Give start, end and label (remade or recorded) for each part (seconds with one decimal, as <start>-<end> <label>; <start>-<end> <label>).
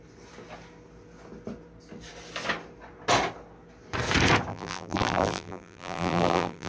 0.0-4.5 recorded; 4.5-6.7 remade